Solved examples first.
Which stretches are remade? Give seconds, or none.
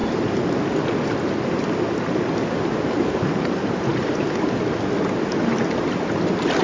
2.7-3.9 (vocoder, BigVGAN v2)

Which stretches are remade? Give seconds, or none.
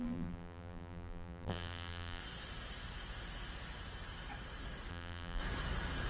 0.0-2.2 (vocoder, BigVGAN v2); 4.9-5.4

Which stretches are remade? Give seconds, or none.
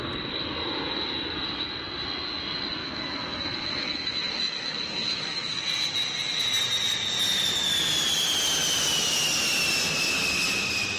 2.8-5.6 (autoencoder, DAC-VAE)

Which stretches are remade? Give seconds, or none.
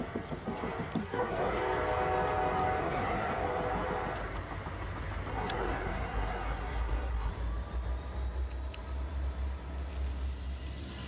1.0-1.6 (codec, SNAC); 2.8-3.3; 5.3-7.3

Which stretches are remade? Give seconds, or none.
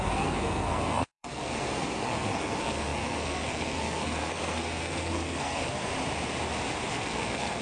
0.0-5.9 (codec, SNAC); 6.9-7.6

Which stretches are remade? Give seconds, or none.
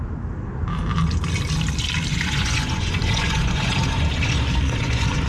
2.1-5.3 (vocoder, Vocos)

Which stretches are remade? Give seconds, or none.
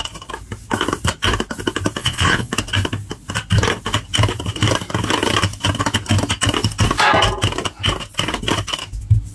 2.0-2.5 (vocoder, Vocos)